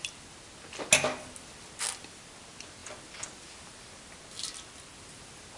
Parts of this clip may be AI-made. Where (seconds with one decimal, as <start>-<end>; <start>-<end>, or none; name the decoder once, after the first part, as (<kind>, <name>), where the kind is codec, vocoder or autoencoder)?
none

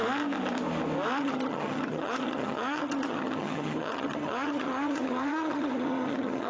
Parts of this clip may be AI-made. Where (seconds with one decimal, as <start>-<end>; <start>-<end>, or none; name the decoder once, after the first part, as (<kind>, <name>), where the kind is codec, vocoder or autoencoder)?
1.2-6.5 (vocoder, HiFi-GAN)

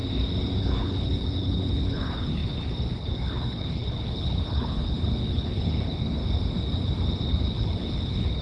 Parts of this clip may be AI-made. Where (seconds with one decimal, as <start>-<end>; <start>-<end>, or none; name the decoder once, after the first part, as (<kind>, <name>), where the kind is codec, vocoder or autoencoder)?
0.6-6.2 (codec, HILCodec); 7.3-8.4